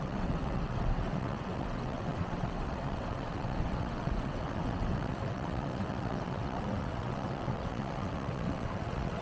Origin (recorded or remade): remade